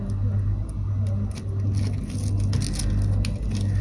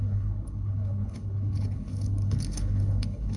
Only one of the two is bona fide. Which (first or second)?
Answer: first